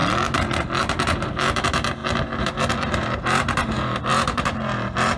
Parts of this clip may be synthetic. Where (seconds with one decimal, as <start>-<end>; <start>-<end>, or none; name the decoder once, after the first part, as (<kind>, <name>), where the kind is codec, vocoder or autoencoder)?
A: 0.8-5.2 (vocoder, BigVGAN v2)